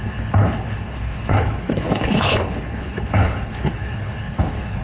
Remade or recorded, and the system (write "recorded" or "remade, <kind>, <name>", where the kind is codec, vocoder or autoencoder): remade, codec, HILCodec